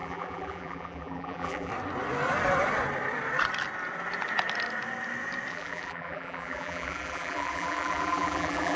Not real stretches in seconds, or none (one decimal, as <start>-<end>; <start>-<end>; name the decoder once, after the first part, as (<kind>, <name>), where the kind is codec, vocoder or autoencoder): 0.0-1.7 (vocoder, BigVGAN v2); 5.5-8.8